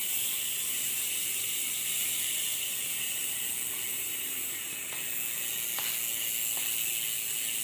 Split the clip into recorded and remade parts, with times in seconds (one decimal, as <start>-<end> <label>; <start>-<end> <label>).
0.0-3.4 remade; 3.4-3.9 recorded; 3.9-4.9 remade; 4.9-7.6 recorded